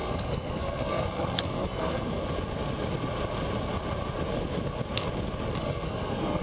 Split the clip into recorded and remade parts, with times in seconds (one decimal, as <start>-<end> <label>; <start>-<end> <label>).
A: 0.0-2.2 remade; 2.2-5.6 recorded; 5.6-6.4 remade